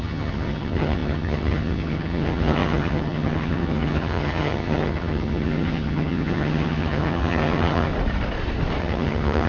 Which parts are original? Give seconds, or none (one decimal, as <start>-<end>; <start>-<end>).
7.9-8.8